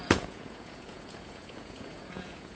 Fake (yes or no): yes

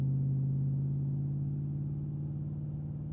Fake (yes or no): no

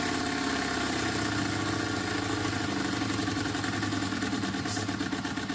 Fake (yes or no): no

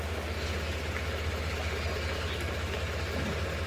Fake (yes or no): no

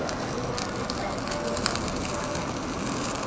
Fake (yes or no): no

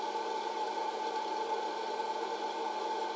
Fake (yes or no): no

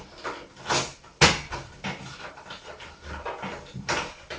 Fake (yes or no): no